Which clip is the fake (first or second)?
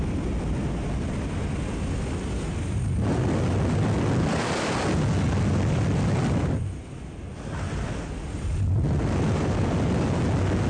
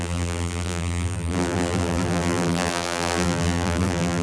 second